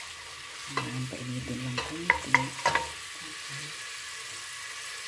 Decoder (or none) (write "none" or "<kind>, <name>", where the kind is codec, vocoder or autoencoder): none